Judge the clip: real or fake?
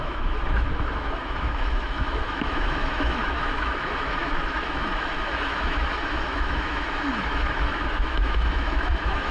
fake